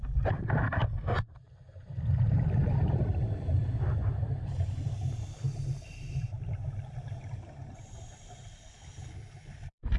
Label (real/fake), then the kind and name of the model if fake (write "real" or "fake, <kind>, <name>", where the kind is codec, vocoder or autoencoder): fake, vocoder, BigVGAN v2